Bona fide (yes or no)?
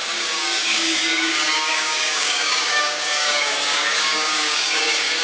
no